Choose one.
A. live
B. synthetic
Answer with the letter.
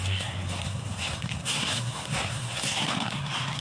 B